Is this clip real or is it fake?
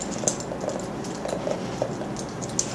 real